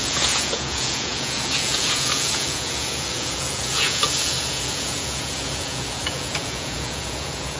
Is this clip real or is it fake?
fake